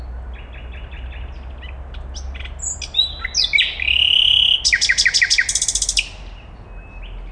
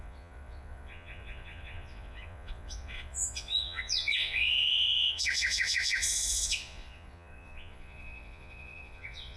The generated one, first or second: second